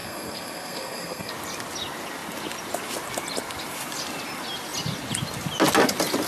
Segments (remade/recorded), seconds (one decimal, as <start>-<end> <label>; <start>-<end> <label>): 0.0-1.3 remade; 1.3-6.3 recorded